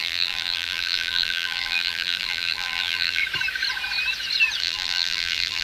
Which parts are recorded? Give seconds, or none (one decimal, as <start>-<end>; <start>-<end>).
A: 3.2-4.6